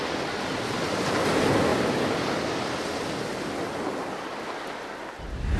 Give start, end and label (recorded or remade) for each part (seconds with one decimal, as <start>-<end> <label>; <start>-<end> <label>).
0.0-5.6 recorded